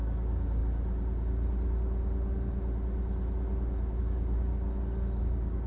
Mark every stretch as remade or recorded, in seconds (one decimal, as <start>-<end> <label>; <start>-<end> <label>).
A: 0.0-0.6 remade; 0.6-4.0 recorded; 4.0-4.5 remade; 4.5-5.2 recorded; 5.2-5.7 remade